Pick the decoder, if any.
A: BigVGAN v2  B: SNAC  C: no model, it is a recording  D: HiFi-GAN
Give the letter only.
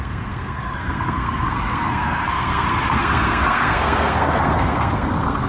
B